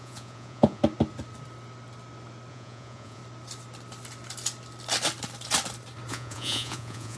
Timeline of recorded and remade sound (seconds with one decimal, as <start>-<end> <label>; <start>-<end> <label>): 0.0-0.8 remade; 0.8-2.5 recorded; 2.5-3.2 remade; 3.2-6.1 recorded; 6.1-7.2 remade